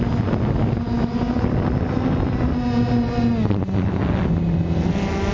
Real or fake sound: real